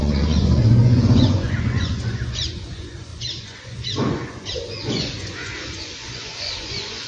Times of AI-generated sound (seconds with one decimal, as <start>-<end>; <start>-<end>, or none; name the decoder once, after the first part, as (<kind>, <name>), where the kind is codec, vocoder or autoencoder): 0.0-7.1 (vocoder, Vocos)